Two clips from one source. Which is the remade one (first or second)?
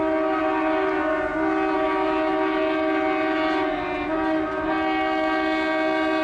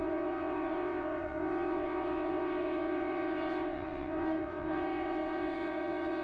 second